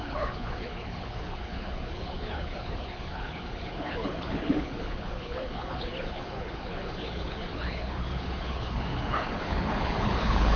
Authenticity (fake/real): fake